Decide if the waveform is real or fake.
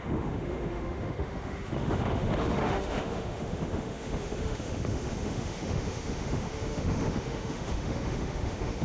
fake